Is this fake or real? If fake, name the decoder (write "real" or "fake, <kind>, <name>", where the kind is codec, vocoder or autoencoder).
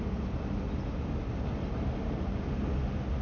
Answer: real